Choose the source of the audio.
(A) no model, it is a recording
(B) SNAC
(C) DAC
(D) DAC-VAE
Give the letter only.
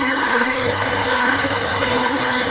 B